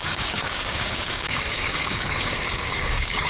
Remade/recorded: remade